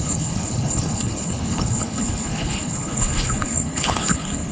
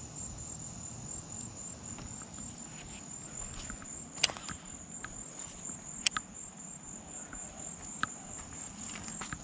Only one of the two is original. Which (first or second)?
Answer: second